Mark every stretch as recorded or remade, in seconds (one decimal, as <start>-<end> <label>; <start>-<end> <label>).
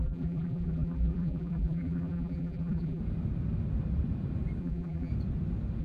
0.0-3.0 remade; 3.0-4.6 recorded; 4.6-5.1 remade; 5.1-5.8 recorded